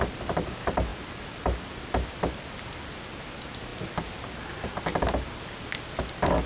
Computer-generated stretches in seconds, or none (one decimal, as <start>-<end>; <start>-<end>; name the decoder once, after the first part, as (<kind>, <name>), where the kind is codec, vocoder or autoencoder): none